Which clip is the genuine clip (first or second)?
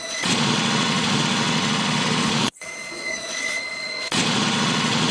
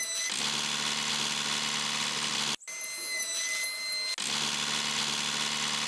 second